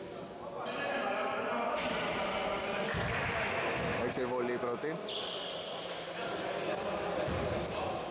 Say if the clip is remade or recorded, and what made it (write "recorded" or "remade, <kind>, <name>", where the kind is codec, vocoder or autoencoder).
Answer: recorded